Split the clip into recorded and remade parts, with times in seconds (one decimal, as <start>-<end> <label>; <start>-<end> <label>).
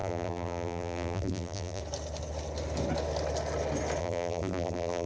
0.0-1.8 remade; 1.8-4.0 recorded; 4.0-5.1 remade